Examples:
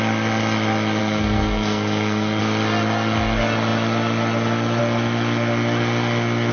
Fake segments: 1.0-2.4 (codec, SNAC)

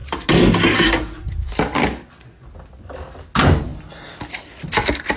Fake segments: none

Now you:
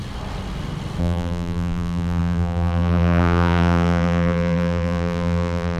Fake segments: 1.0-5.8 (vocoder, BigVGAN v2)

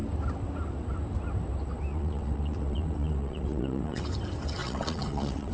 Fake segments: 1.9-4.0 (vocoder, WaveNeXt); 4.6-5.5

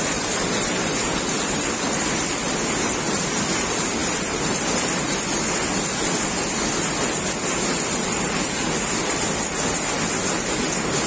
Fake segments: none